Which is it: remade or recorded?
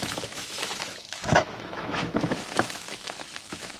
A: remade